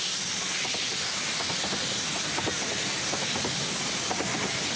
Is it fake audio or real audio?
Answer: real